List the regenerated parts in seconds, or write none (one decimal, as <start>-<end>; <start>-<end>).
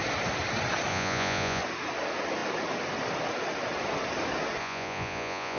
0.9-1.6; 4.6-5.6